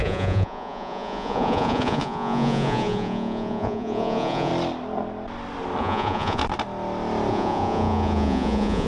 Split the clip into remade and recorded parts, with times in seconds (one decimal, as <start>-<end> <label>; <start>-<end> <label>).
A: 0.0-4.5 remade; 4.5-5.8 recorded; 5.8-6.4 remade; 6.4-7.3 recorded; 7.3-8.9 remade